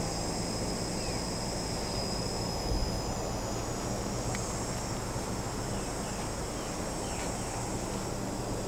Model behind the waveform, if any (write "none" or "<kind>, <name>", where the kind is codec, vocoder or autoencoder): none